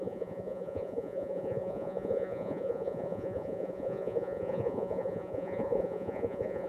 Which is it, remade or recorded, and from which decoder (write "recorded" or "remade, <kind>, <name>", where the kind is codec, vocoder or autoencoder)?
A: remade, vocoder, Vocos